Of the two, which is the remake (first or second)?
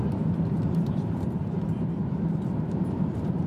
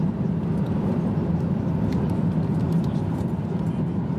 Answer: first